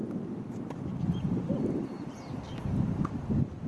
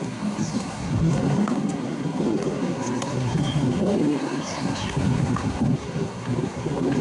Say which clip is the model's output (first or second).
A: second